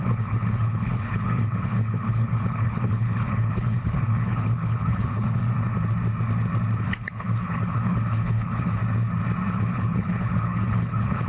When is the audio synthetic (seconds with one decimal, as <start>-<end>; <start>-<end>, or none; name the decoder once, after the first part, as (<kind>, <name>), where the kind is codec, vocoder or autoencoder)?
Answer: 0.0-5.4 (codec, HILCodec); 6.8-8.8; 9.5-11.3